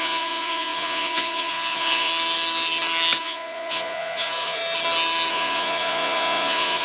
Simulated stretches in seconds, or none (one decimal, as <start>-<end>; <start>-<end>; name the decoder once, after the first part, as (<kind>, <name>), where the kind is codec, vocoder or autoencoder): 0.0-2.1 (vocoder, Vocos); 3.2-4.6; 5.3-6.8